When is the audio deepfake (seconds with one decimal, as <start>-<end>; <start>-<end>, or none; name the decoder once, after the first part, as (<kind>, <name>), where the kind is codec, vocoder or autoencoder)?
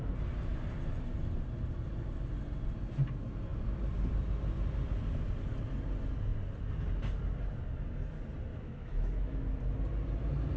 8.5-9.4 (autoencoder, DAC-VAE)